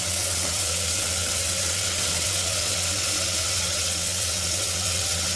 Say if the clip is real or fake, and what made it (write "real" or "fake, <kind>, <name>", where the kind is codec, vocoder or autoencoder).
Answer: fake, vocoder, WaveNeXt